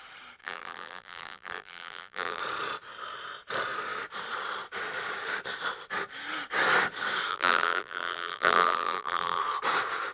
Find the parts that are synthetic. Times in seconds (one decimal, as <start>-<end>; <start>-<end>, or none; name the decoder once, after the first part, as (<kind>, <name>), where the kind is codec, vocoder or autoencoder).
0.4-2.4 (vocoder, BigVGAN v2); 7.3-9.4